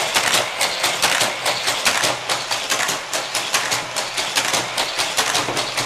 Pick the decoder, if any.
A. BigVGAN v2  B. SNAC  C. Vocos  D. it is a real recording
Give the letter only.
D